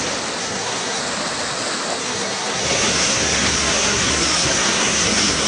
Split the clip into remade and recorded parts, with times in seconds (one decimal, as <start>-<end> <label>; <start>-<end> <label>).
0.0-0.4 recorded; 0.4-1.0 remade; 1.0-2.0 recorded; 2.0-5.5 remade